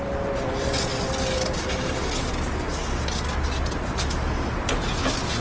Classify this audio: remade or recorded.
recorded